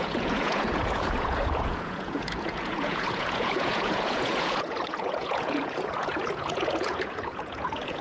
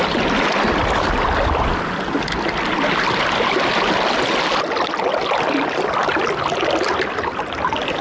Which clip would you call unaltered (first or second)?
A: second